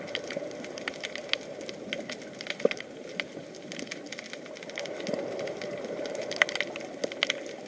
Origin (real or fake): real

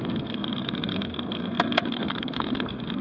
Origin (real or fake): fake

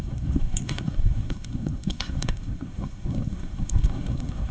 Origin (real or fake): fake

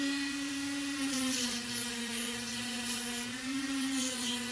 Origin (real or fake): fake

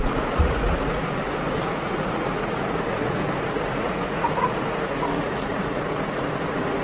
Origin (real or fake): fake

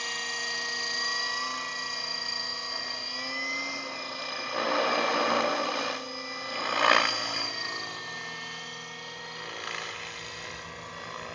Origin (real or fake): real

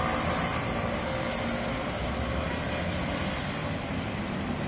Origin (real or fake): real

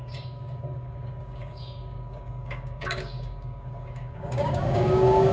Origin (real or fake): fake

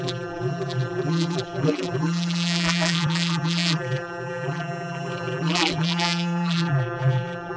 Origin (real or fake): fake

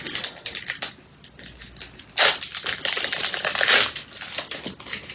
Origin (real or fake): real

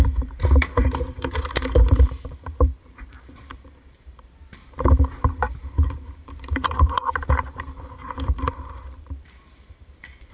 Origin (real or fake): fake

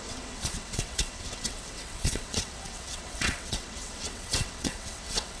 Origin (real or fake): fake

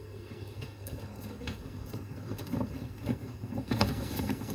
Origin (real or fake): fake